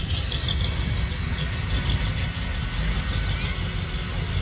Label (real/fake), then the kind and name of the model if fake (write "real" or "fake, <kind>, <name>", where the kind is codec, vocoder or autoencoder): real